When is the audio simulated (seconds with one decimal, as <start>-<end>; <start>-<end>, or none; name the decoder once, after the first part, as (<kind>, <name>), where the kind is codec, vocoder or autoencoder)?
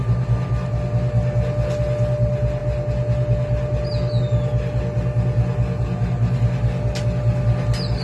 none